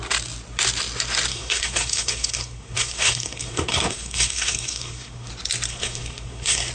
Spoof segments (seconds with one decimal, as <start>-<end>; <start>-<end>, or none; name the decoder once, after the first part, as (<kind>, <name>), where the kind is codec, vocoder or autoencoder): 1.3-5.3 (codec, SNAC); 5.7-6.7